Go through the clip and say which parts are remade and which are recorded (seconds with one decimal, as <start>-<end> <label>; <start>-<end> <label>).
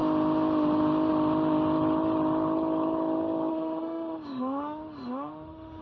0.0-3.5 recorded; 3.5-5.8 remade